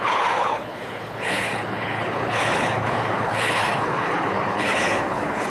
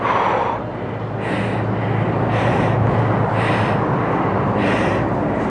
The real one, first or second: second